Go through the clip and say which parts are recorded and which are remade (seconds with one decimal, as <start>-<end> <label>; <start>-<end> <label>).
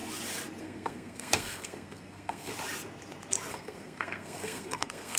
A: 0.0-0.6 recorded; 0.6-2.5 remade; 2.5-3.5 recorded; 3.5-5.2 remade